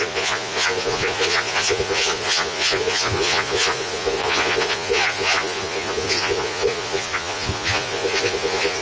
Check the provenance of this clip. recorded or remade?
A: remade